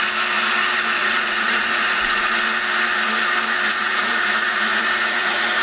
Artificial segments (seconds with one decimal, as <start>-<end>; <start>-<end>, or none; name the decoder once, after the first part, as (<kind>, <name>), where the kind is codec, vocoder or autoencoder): 1.0-2.4 (vocoder, Vocos); 3.7-5.6